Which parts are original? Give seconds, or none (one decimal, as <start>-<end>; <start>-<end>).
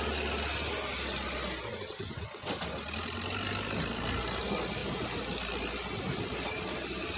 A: 0.0-1.7; 2.5-7.2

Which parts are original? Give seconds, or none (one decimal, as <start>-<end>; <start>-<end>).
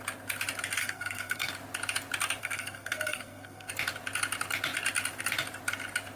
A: 0.0-0.8; 1.5-2.4; 3.7-6.2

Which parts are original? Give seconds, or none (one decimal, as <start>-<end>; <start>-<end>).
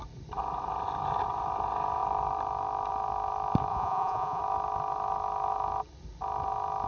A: 0.0-3.7; 4.4-6.9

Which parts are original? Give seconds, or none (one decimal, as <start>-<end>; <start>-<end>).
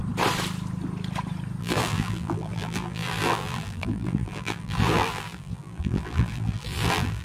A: 0.0-1.6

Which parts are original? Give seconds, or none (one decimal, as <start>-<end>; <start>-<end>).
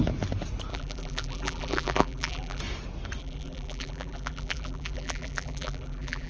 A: 0.0-0.7; 2.6-3.2